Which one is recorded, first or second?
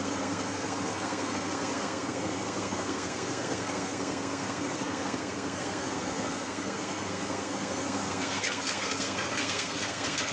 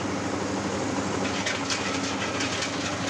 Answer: second